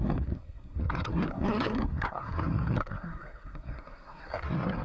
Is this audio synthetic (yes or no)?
yes